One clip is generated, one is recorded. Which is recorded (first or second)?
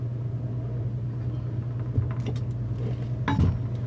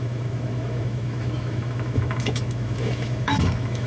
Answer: first